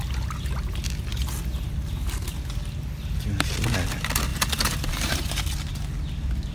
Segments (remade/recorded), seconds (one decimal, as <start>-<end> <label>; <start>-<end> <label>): 0.0-1.1 recorded; 1.1-1.9 remade; 1.9-4.3 recorded; 4.3-5.5 remade; 5.5-6.5 recorded

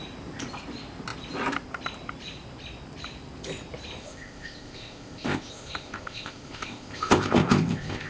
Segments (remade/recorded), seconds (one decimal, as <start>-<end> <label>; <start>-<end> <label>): 0.0-4.0 recorded; 4.0-8.1 remade

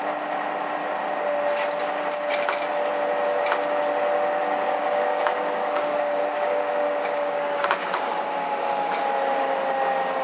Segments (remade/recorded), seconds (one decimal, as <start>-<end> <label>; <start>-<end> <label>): 0.0-4.4 recorded; 4.4-9.0 remade; 9.0-10.2 recorded

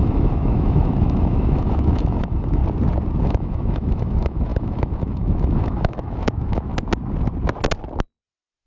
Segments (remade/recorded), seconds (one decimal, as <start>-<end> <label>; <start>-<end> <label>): 0.0-2.6 remade; 2.6-3.2 recorded; 3.2-6.7 remade; 6.7-8.7 recorded